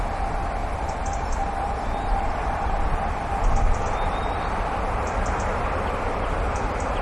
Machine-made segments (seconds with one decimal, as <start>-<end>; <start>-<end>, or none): 0.6-3.4